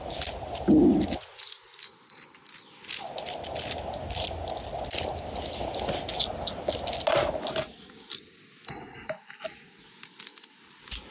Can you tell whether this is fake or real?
real